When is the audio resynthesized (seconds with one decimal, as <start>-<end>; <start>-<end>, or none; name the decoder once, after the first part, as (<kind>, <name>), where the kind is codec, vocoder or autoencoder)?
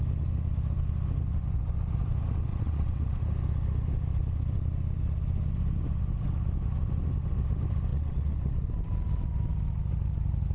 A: 2.5-3.2 (vocoder, WaveNeXt); 7.9-8.5